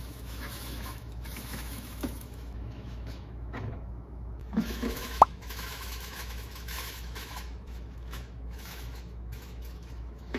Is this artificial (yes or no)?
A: yes